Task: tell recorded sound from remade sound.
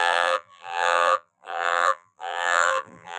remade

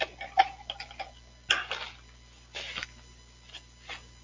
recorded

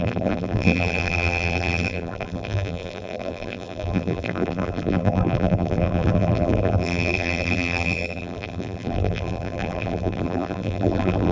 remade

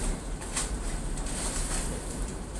remade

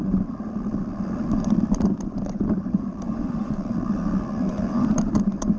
remade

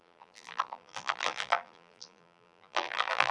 remade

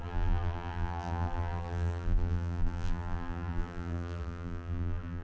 remade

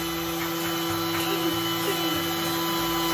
recorded